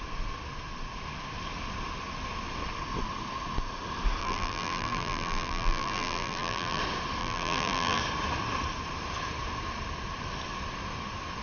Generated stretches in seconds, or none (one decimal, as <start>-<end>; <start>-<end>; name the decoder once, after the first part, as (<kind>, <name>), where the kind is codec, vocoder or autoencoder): 4.2-6.8 (vocoder, BigVGAN v2); 7.2-8.0